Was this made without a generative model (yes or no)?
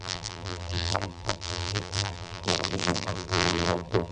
no